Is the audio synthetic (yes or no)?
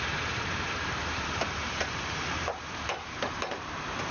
yes